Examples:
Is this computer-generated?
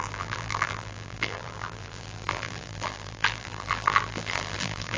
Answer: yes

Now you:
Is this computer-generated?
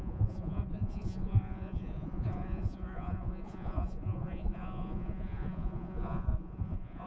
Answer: yes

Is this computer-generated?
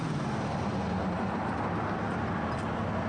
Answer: no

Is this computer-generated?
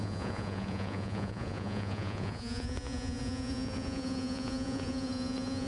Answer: yes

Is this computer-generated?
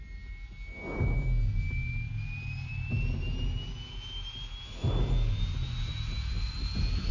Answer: no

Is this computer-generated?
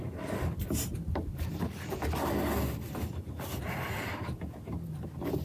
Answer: no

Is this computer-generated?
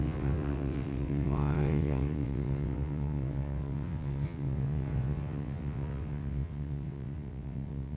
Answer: yes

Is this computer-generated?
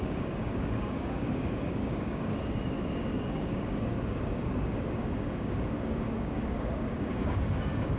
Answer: yes